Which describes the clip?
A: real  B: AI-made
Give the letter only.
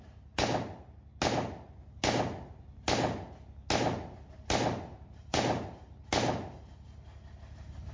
A